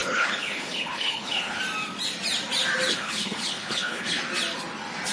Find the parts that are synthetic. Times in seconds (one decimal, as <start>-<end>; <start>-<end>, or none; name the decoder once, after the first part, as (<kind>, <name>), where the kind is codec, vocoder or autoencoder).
0.0-1.6 (codec, HILCodec); 2.9-4.2